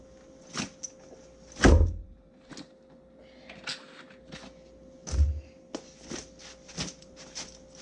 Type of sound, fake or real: real